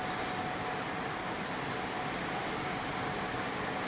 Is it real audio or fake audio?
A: real